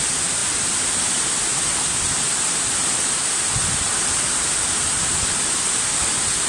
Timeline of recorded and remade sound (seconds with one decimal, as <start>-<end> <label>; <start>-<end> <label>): 0.0-6.5 recorded